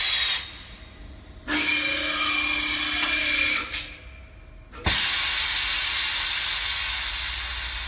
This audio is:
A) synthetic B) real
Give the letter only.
B